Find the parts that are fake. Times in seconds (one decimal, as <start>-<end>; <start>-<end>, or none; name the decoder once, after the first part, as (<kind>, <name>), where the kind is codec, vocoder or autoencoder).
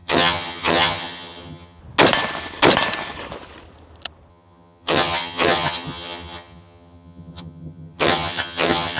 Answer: 0.0-1.8 (vocoder, HiFi-GAN); 4.3-9.0